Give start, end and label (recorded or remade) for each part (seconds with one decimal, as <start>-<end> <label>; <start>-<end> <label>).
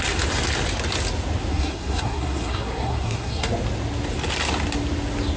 0.0-1.5 recorded; 1.5-3.5 remade; 3.5-5.4 recorded